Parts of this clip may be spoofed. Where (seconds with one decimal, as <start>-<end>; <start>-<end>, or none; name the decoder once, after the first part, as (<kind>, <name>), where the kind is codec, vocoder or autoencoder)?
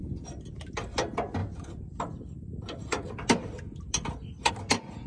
none